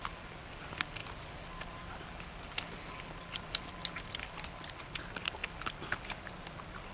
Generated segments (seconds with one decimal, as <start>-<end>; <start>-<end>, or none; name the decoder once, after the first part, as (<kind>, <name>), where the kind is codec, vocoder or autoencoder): none

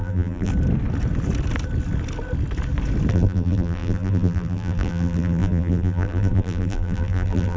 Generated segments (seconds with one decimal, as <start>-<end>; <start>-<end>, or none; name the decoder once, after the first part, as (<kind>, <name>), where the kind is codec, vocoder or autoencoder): 0.0-0.5 (vocoder, BigVGAN v2); 3.1-7.6

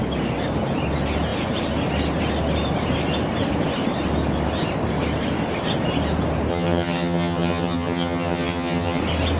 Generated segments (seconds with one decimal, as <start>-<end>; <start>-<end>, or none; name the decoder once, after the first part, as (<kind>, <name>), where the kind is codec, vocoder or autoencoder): 6.5-9.0 (vocoder, HiFi-GAN)

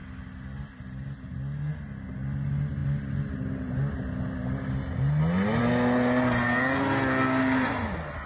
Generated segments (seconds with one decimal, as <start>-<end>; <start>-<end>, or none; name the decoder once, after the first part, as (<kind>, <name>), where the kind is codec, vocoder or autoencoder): none

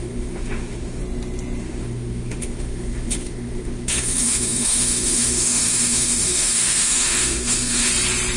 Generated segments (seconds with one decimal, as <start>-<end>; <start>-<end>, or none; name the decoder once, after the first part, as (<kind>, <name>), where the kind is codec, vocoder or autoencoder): 0.0-1.0 (autoencoder, DAC-VAE); 1.6-7.9

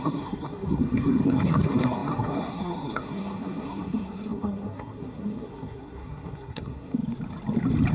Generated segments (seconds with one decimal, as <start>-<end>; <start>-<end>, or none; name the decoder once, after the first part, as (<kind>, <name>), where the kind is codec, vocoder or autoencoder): 0.0-7.0 (codec, SNAC)

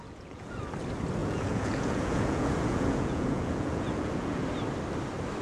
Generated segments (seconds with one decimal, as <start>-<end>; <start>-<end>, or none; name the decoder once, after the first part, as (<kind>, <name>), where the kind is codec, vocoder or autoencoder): 0.0-0.6 (vocoder, Vocos); 1.2-4.4

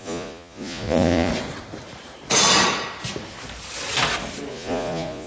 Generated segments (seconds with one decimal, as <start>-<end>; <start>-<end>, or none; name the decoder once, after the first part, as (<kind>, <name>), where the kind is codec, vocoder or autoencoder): 0.0-1.3 (vocoder, Vocos); 4.5-5.3